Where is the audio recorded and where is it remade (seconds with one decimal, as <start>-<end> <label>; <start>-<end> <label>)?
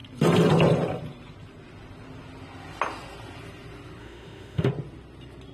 0.0-4.0 recorded; 4.0-4.7 remade; 4.7-5.5 recorded